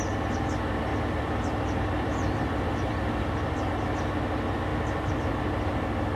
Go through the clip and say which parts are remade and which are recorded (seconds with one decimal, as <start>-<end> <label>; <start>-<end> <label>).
0.0-0.9 recorded; 0.9-3.7 remade; 3.7-4.7 recorded; 4.7-5.3 remade; 5.3-6.2 recorded